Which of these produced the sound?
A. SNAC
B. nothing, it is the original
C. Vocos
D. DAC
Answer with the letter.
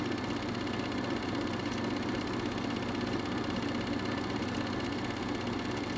B